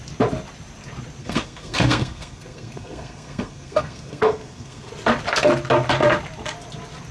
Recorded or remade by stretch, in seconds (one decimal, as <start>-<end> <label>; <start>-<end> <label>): 0.0-1.2 recorded; 1.2-4.9 remade; 4.9-7.1 recorded